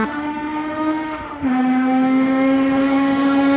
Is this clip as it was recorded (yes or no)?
no